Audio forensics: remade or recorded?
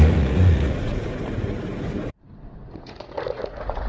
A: remade